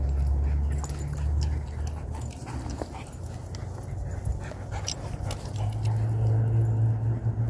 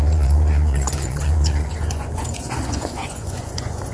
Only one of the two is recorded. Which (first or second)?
first